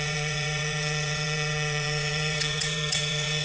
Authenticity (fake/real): fake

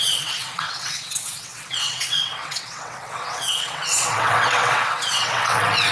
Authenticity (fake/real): fake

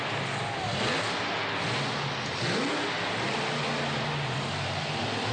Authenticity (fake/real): real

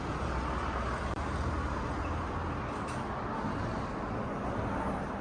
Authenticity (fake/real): real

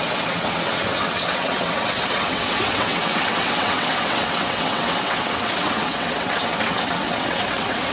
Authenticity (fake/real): fake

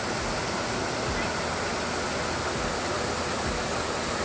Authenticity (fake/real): real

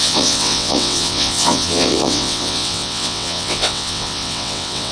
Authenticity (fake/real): fake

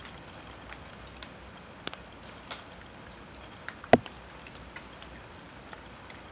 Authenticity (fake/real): real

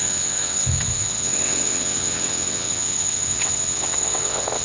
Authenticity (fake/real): fake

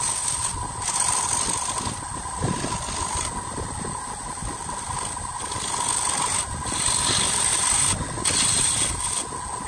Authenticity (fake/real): real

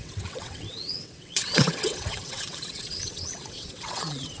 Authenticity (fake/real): fake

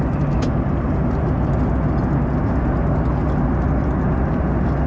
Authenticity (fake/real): real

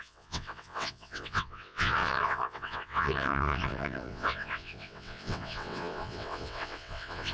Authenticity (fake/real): fake